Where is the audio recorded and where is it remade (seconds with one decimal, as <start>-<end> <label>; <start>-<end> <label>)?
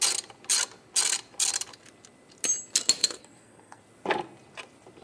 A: 0.0-3.0 recorded; 3.0-3.8 remade; 3.8-5.0 recorded